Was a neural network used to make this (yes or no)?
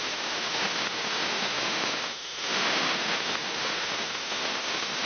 yes